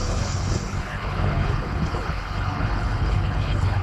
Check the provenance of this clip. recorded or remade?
remade